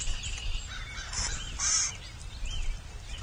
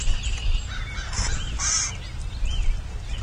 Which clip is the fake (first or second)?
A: first